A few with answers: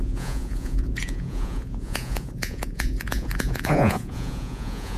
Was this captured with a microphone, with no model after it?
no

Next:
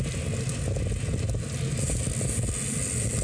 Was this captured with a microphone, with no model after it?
yes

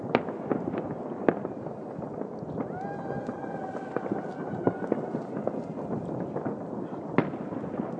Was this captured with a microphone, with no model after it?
yes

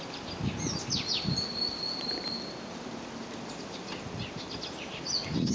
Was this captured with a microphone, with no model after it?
yes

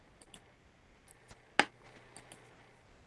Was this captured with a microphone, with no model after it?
yes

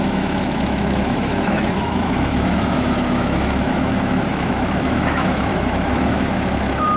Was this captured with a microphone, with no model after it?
no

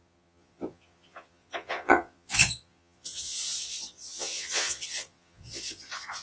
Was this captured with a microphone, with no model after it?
no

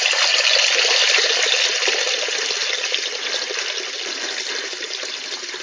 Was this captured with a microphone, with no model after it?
yes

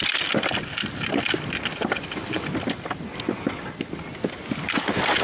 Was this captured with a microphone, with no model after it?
yes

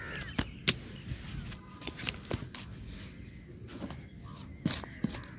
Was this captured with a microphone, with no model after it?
yes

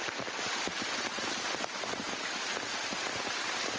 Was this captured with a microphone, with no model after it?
yes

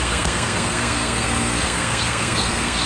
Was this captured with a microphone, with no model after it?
no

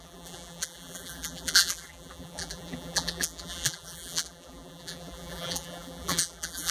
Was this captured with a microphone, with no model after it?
no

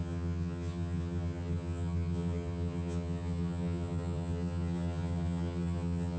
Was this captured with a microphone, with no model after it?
no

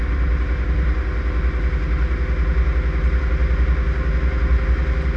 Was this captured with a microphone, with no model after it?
yes